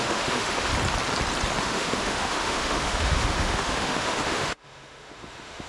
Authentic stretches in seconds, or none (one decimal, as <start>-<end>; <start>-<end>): 0.7-1.6